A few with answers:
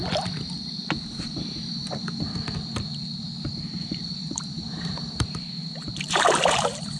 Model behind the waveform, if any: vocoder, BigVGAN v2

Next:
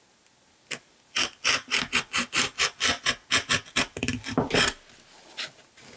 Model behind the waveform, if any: none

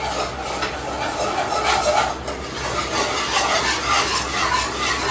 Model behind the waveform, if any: none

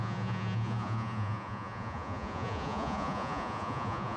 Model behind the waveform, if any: vocoder, Vocos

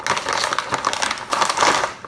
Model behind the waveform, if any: none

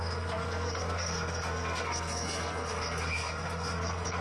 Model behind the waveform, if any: codec, SNAC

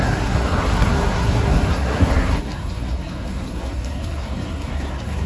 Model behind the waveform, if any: codec, SNAC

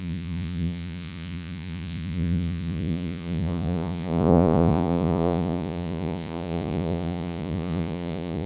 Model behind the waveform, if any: vocoder, Vocos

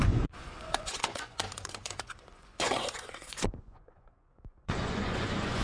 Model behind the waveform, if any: vocoder, Vocos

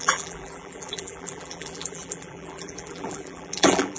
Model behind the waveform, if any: vocoder, BigVGAN v2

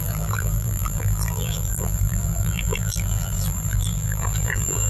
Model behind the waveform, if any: vocoder, BigVGAN v2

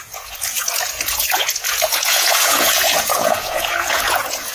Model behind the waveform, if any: vocoder, Vocos